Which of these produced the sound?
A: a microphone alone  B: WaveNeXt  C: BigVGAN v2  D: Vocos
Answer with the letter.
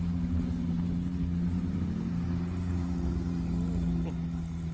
A